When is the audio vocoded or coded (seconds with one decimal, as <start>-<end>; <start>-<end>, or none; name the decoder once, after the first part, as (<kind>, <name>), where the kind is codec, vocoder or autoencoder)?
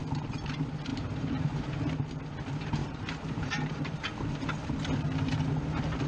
0.9-1.7 (vocoder, BigVGAN v2); 2.8-4.0